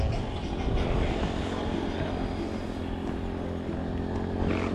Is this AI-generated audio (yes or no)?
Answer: no